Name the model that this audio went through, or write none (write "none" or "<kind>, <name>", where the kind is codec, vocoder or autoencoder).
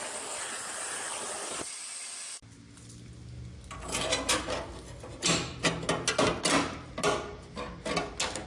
none